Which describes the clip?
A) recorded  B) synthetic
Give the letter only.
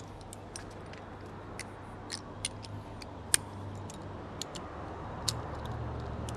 A